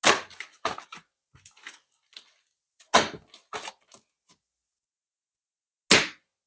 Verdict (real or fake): real